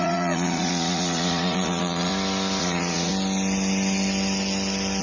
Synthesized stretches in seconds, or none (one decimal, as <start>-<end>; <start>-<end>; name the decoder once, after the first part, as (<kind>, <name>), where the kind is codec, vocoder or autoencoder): 0.0-2.1 (vocoder, Vocos); 2.6-3.1